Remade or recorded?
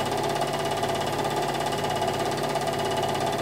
recorded